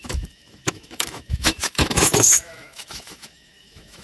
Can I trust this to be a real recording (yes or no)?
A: no